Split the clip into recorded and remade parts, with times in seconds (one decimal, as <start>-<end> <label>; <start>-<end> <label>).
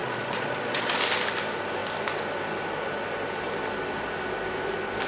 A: 0.0-1.0 remade; 1.0-5.1 recorded